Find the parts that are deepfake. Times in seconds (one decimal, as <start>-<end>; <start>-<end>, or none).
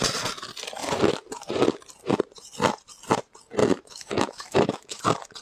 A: 3.6-5.0